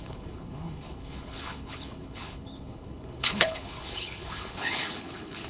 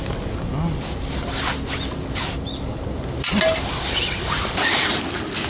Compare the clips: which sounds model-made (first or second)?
first